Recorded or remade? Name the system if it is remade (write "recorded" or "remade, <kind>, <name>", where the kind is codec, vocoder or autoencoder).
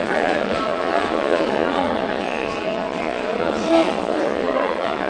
remade, vocoder, Vocos